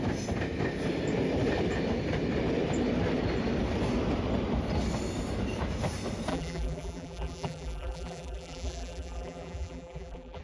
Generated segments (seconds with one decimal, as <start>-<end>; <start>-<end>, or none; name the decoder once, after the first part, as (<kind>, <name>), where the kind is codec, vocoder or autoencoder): 6.3-10.4 (vocoder, BigVGAN v2)